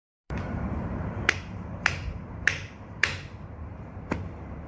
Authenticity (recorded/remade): remade